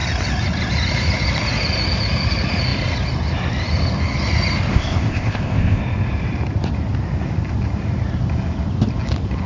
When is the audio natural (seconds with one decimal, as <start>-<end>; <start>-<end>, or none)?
0.0-4.7; 5.8-9.5